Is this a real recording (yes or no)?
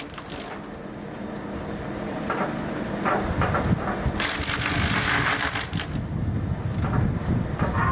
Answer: yes